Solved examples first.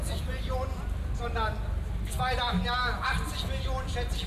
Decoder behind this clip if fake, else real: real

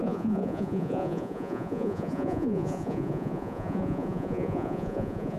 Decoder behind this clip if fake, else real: fake, vocoder, Vocos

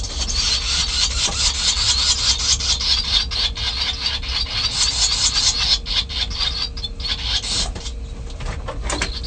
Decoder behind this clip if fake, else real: real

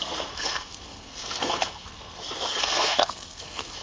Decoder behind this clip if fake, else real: fake, codec, SNAC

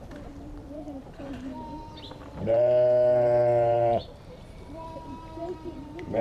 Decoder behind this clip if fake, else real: fake, vocoder, BigVGAN v2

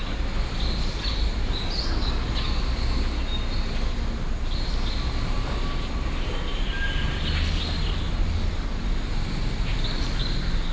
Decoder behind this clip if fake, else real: real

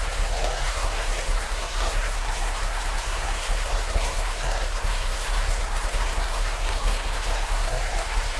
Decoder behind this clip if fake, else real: fake, codec, SNAC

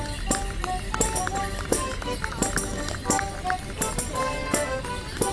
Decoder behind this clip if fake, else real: real